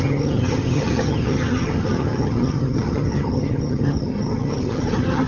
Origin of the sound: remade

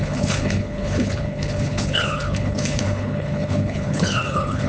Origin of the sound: remade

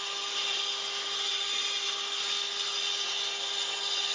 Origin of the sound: recorded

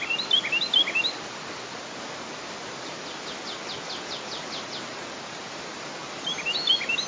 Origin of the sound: recorded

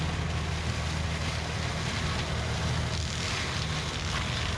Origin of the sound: recorded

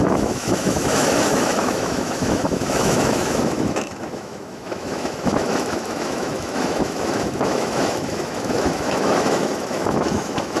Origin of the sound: remade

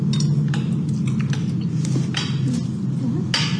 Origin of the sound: recorded